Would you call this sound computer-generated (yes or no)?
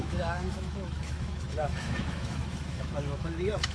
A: yes